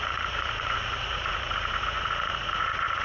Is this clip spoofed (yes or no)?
yes